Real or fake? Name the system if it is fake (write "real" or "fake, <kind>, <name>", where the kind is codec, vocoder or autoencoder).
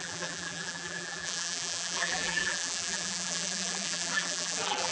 fake, vocoder, BigVGAN v2